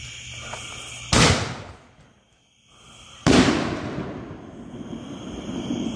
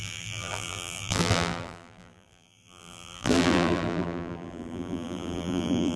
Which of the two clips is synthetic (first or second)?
second